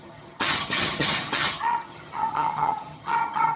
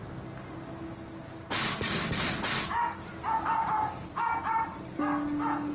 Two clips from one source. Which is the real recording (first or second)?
second